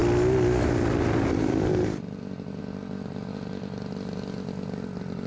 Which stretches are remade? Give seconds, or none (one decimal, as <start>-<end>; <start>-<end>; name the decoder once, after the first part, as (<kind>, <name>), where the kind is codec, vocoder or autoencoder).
none